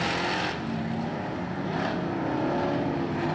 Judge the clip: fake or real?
real